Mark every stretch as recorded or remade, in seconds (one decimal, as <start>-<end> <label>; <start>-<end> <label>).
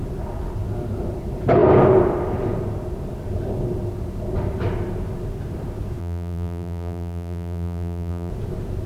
0.0-6.0 recorded; 6.0-8.3 remade; 8.3-8.9 recorded